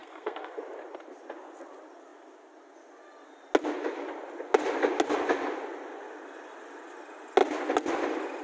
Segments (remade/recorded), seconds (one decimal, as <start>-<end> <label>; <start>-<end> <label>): 0.0-0.6 remade; 0.6-8.4 recorded